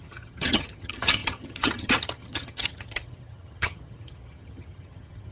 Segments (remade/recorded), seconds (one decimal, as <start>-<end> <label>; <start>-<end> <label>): 0.0-5.3 remade

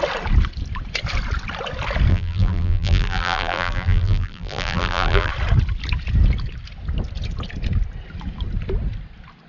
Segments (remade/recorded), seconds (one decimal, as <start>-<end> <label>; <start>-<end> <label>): 0.0-2.1 recorded; 2.1-5.3 remade; 5.3-9.5 recorded

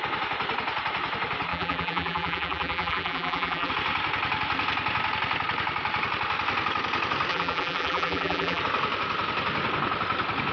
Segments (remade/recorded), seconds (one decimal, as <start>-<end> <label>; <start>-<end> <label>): 0.0-1.5 recorded; 1.5-3.7 remade; 3.7-7.3 recorded; 7.3-8.6 remade; 8.6-10.5 recorded

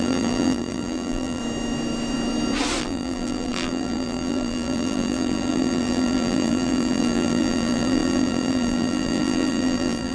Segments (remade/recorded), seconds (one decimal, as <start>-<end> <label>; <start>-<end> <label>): 0.0-1.4 remade; 1.4-2.8 recorded; 2.8-10.1 remade

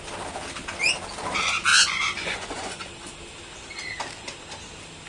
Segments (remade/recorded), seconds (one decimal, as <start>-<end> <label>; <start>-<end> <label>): 0.0-1.7 recorded; 1.7-2.9 remade; 2.9-5.1 recorded

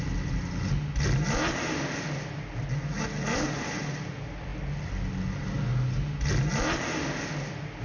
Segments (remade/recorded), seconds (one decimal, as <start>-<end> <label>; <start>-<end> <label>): 0.0-7.8 recorded